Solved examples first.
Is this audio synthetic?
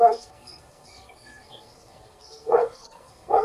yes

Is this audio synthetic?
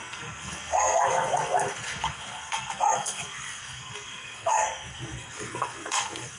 yes